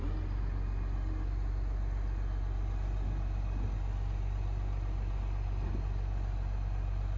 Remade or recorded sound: recorded